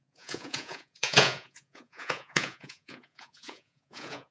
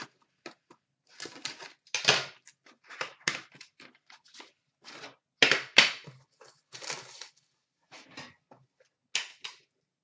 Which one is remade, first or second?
first